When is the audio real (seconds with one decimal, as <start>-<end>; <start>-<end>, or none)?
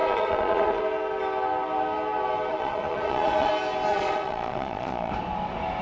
0.8-2.5; 3.5-3.9; 5.1-5.8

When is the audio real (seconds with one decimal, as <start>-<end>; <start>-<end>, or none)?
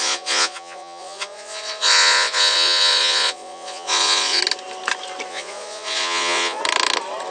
4.4-5.3; 6.6-7.3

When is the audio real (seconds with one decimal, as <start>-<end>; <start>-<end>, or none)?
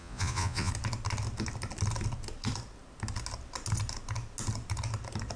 0.7-5.4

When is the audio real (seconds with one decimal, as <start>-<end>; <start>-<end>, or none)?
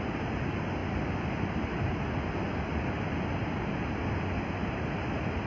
0.0-5.5